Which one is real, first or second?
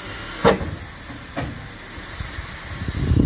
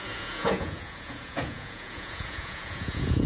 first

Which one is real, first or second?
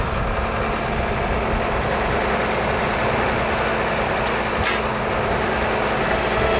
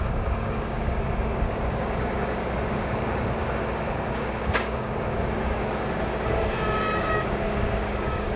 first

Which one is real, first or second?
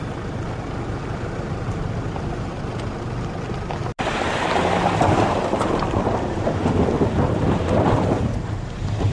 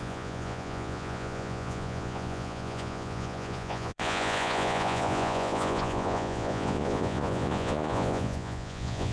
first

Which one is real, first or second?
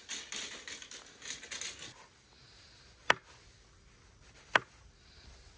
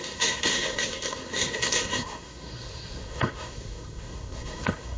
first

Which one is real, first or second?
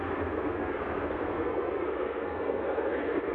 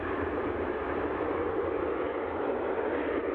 second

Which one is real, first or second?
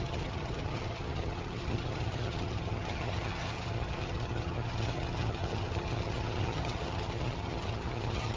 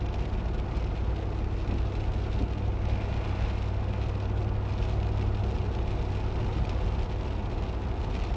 second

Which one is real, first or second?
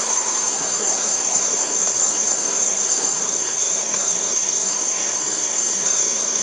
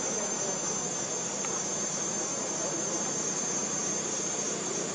second